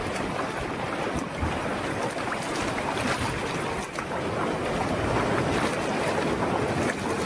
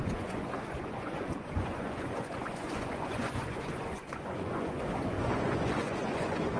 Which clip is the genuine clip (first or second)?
first